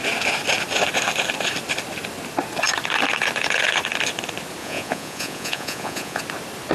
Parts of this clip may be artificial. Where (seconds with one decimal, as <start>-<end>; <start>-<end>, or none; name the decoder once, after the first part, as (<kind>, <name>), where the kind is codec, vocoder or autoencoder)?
4.6-6.2 (vocoder, Vocos)